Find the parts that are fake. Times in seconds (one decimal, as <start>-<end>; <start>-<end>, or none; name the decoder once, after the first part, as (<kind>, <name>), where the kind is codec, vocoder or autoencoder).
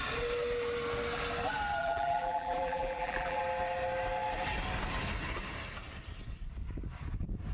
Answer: 1.8-3.4 (vocoder, BigVGAN v2)